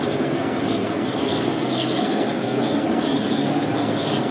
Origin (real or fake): fake